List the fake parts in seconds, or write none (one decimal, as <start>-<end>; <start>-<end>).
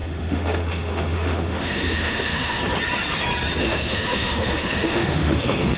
0.0-2.6; 3.6-5.8